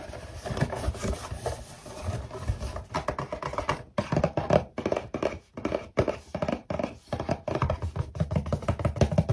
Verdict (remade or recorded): recorded